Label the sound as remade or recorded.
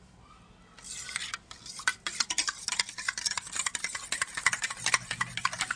recorded